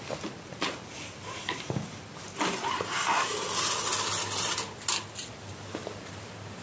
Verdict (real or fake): real